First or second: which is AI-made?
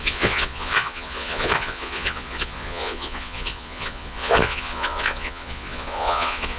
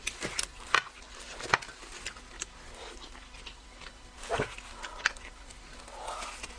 first